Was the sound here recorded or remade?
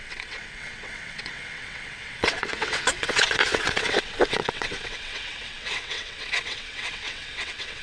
remade